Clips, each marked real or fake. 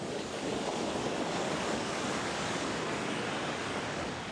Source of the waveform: fake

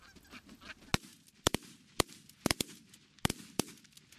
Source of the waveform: real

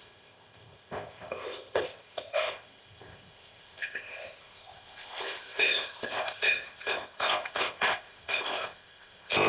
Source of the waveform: fake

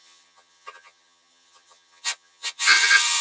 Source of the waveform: fake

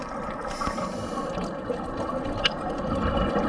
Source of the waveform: real